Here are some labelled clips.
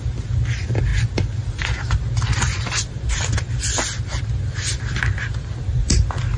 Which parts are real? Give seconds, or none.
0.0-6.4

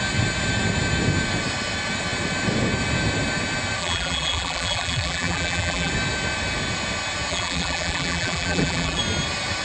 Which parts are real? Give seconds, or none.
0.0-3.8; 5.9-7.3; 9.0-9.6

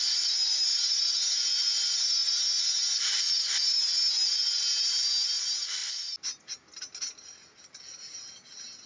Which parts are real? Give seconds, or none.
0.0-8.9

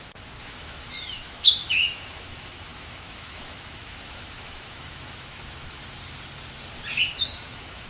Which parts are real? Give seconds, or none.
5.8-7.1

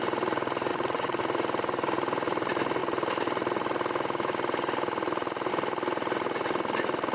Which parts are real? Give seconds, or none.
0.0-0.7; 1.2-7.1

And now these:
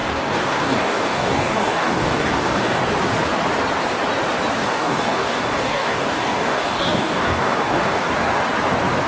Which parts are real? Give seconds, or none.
2.8-4.6; 8.1-9.1

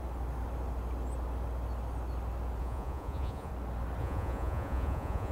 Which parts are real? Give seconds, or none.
0.0-2.6; 3.5-4.0

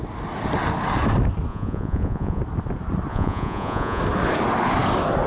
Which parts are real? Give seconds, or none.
0.0-1.5; 2.4-3.1; 4.0-5.3